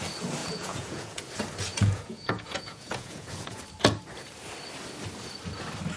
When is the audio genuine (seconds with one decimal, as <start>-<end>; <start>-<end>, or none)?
0.0-0.4; 1.2-1.7; 3.6-6.0